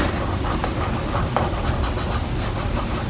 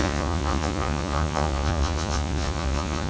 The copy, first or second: second